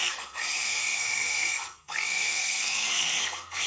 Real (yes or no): no